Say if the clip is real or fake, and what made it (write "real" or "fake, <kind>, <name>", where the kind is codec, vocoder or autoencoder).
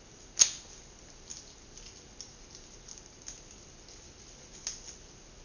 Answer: real